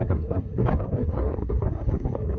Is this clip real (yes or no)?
no